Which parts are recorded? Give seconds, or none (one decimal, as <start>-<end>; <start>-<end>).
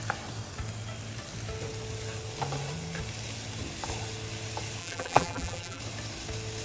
0.0-4.8; 5.8-6.6